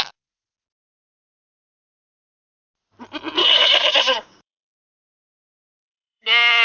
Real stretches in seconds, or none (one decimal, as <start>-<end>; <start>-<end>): 0.0-3.4

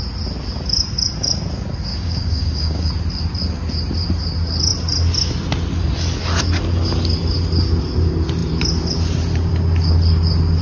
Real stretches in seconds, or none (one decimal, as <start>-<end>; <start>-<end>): 0.0-1.9; 2.9-10.6